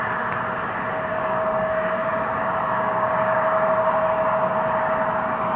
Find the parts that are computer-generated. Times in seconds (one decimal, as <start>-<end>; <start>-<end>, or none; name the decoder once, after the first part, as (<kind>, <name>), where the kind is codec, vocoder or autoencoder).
1.1-4.5 (codec, DAC)